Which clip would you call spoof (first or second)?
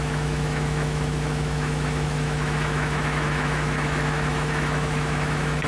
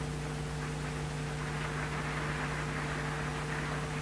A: first